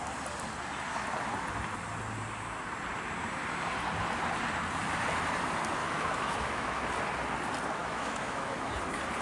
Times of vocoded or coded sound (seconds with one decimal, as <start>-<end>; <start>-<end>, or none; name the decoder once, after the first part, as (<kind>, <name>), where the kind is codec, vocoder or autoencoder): 5.8-6.8 (autoencoder, DAC-VAE); 7.8-8.7